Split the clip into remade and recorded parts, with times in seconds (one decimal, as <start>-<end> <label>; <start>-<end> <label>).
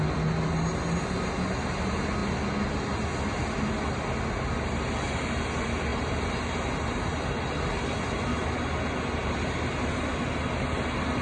0.0-5.9 recorded; 5.9-7.7 remade; 7.7-9.2 recorded; 9.2-10.2 remade; 10.2-11.2 recorded